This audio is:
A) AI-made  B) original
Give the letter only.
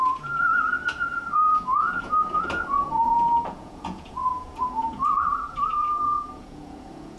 A